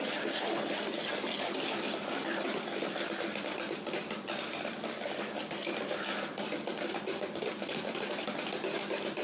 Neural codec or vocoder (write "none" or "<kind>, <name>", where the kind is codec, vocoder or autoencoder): none